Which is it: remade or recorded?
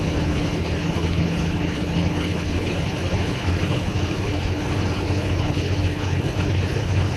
remade